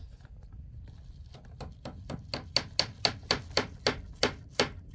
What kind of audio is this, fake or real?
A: real